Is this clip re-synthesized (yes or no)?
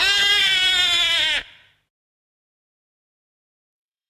yes